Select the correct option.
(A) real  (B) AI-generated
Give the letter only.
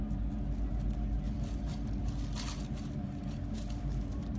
A